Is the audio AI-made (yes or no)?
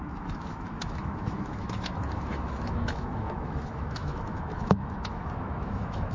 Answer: yes